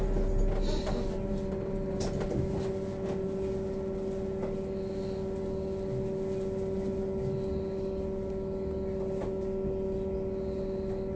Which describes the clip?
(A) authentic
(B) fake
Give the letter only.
A